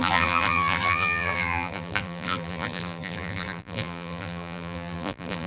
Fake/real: fake